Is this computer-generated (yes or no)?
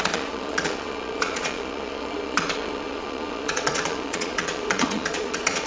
yes